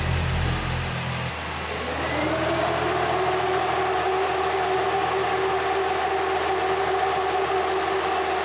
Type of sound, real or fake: real